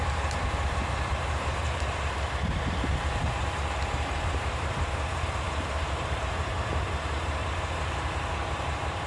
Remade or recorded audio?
remade